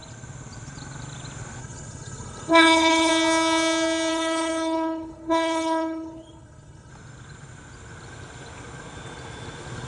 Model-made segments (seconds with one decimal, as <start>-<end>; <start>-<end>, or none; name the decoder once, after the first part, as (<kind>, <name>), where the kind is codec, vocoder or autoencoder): 1.6-3.1 (codec, HILCodec); 4.1-6.9